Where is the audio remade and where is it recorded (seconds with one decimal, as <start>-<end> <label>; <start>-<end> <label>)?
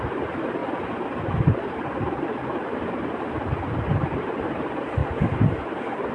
0.0-0.6 remade; 0.6-1.2 recorded; 1.2-6.1 remade